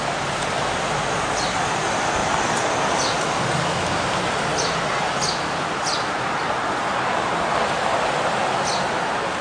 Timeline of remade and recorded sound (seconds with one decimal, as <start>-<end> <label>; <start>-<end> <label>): 0.0-9.4 recorded